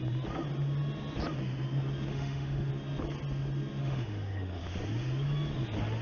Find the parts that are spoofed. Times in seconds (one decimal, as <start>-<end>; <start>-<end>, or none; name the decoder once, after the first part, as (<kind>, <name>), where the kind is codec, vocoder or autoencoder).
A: 2.1-2.7 (autoencoder, DAC-VAE); 3.8-4.6